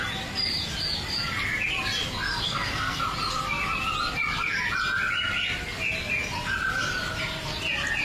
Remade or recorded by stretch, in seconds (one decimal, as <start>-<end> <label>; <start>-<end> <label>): 0.0-2.3 recorded; 2.3-3.0 remade; 3.0-8.0 recorded